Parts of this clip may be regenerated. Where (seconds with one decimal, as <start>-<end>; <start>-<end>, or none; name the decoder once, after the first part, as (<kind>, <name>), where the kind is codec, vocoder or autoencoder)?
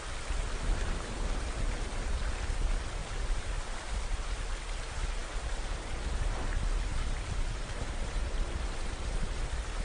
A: 3.0-3.9 (vocoder, BigVGAN v2); 6.9-9.0